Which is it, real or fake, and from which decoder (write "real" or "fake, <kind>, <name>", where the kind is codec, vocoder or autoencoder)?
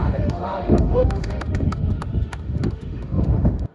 fake, autoencoder, DAC-VAE